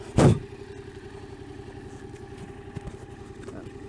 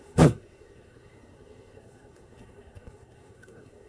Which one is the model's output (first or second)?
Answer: second